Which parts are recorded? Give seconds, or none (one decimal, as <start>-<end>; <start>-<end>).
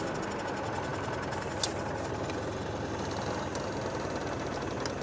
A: 0.0-5.0